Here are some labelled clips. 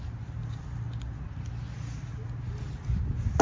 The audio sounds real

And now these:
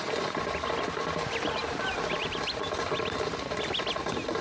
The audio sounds real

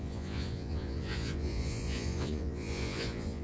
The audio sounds fake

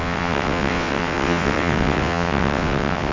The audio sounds fake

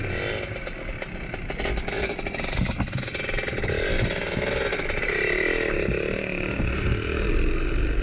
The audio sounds real